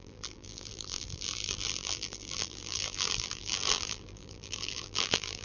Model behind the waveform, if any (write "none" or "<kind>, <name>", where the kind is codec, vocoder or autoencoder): vocoder, BigVGAN v2